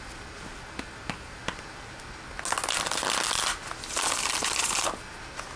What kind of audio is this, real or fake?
real